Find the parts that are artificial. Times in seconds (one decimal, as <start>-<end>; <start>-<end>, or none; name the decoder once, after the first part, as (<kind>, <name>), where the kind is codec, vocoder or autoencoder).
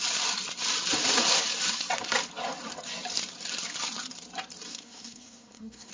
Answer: 4.7-5.9 (codec, SNAC)